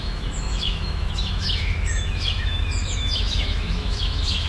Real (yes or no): no